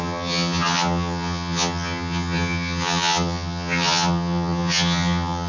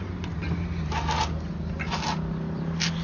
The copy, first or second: first